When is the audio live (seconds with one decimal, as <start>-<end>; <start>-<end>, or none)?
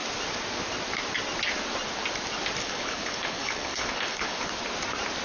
0.0-2.6; 4.5-5.2